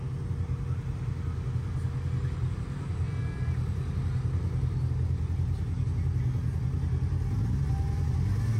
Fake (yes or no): no